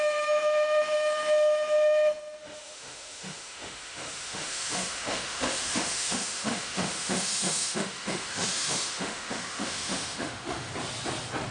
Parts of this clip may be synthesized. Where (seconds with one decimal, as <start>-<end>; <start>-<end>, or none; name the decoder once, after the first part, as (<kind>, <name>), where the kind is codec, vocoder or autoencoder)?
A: 0.0-10.7 (autoencoder, DAC-VAE)